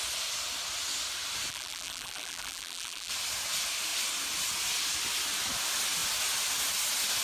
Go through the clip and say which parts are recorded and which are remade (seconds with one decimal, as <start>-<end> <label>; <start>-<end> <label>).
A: 0.0-1.5 recorded; 1.5-3.1 remade; 3.1-7.2 recorded